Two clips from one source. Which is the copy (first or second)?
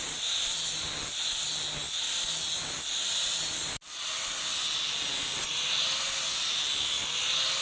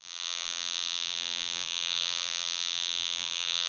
second